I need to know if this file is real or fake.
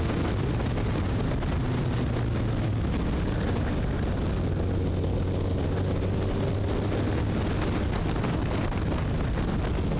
real